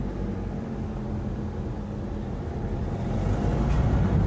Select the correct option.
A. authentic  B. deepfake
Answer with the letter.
A